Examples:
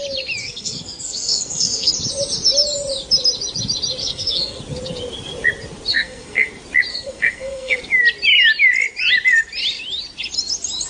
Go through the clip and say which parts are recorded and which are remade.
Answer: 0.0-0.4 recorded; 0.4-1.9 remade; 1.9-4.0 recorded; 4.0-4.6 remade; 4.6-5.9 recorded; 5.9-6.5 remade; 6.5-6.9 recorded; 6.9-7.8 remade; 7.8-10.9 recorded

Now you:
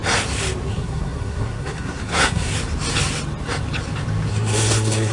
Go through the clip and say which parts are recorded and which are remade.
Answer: 0.0-0.7 recorded; 0.7-2.5 remade; 2.5-4.3 recorded; 4.3-5.1 remade